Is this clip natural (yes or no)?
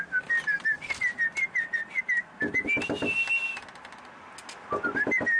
yes